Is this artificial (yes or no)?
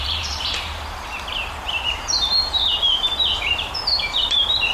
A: yes